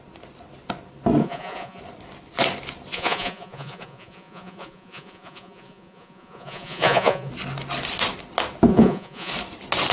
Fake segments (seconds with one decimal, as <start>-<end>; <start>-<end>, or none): 1.2-1.8; 2.9-7.3; 8.7-9.3